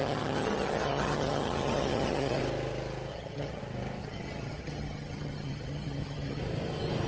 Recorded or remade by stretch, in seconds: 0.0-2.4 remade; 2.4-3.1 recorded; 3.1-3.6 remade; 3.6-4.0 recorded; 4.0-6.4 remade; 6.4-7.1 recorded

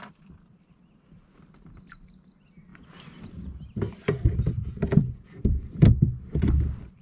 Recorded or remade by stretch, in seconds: 0.0-7.0 recorded

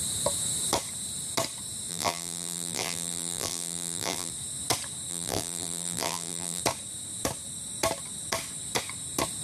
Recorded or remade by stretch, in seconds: 0.0-1.9 recorded; 1.9-4.3 remade; 4.3-5.1 recorded; 5.1-6.6 remade; 6.6-9.4 recorded